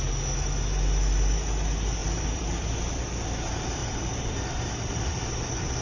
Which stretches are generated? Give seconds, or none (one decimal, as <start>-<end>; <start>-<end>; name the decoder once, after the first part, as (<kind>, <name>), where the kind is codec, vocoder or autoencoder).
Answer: 2.0-3.0 (vocoder, BigVGAN v2); 3.8-4.6